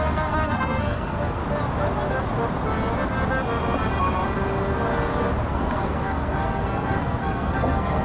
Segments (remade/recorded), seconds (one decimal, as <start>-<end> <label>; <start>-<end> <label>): 0.0-1.4 remade; 1.4-5.5 recorded; 5.5-8.0 remade